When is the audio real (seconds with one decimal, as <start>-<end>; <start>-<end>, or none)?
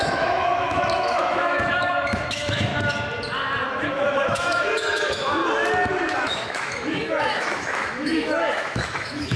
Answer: 2.7-3.7; 5.4-6.0